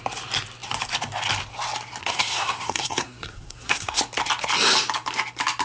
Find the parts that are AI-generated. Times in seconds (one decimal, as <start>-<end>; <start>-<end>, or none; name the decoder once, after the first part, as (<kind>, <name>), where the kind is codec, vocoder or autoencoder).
2.0-4.0 (codec, SNAC)